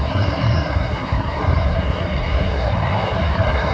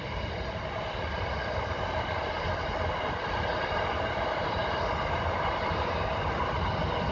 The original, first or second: second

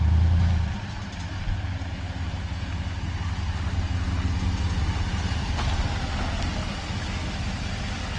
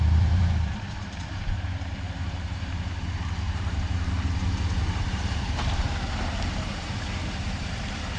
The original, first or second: first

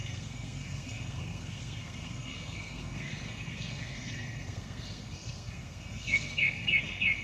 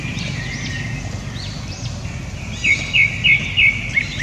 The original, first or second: second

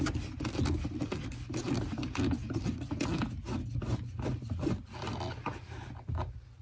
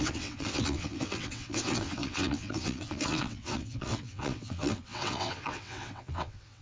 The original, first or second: first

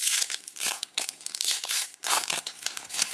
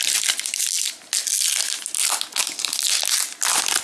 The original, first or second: second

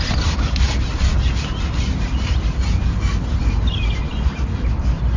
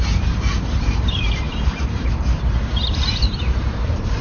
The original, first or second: first